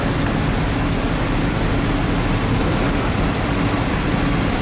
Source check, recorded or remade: remade